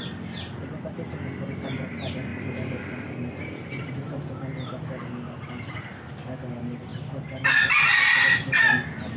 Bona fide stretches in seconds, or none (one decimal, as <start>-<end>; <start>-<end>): 0.0-2.3; 4.1-9.2